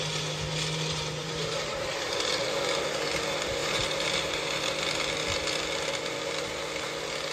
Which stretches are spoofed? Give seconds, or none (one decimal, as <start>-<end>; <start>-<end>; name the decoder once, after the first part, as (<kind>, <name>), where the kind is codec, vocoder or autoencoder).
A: 1.2-2.3 (vocoder, BigVGAN v2); 3.6-4.7

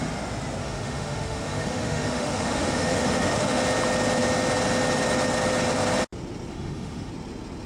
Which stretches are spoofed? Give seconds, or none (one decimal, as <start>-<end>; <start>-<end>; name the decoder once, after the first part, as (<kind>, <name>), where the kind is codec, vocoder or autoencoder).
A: 0.6-3.6 (autoencoder, DAC-VAE); 6.5-7.1